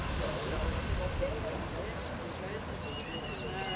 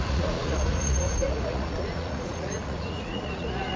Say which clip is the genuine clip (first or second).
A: first